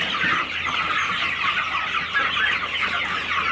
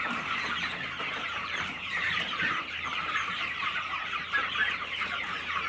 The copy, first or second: second